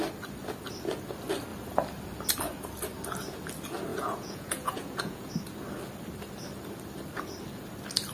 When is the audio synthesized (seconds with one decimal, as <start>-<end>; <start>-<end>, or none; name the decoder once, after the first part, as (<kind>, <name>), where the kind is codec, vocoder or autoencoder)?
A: 3.9-5.3 (vocoder, Vocos)